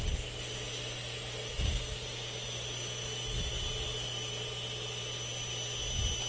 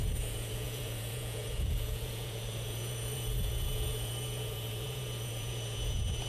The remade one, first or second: second